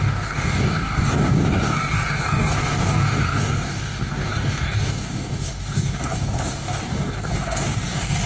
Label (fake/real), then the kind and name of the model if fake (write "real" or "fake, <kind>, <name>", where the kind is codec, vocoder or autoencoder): fake, codec, DAC